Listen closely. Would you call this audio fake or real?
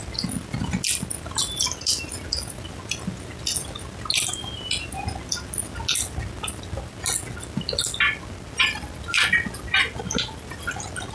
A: real